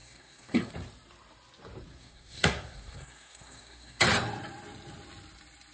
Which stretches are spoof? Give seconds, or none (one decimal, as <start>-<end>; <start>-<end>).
0.0-0.7; 1.9-4.0

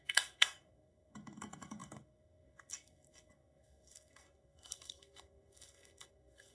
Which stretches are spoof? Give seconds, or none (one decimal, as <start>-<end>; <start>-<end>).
0.0-6.5